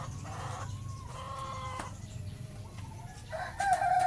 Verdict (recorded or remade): recorded